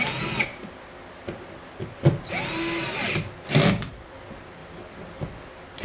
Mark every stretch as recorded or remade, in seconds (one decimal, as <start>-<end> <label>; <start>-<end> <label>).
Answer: 0.0-5.8 recorded